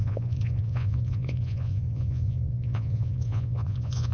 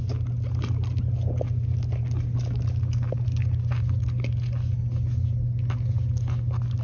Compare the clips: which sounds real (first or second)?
second